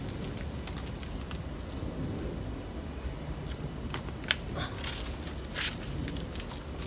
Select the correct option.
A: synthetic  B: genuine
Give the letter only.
B